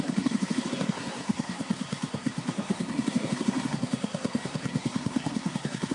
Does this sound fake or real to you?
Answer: fake